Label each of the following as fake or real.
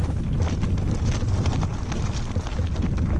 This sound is real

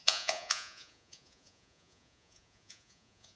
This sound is fake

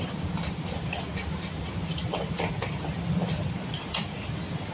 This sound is fake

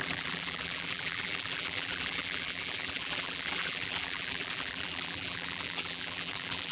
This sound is fake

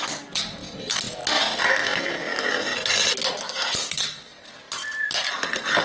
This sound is real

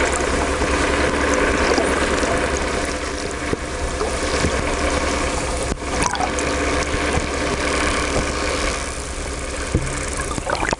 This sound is real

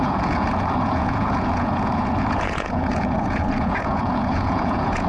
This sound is fake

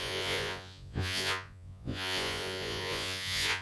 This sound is fake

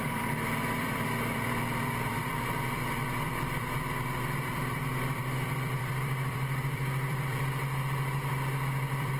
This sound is fake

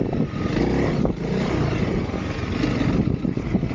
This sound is real